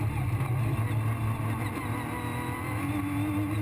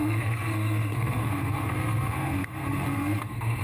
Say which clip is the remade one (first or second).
second